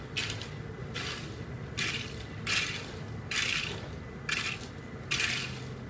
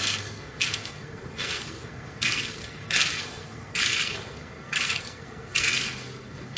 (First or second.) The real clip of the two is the first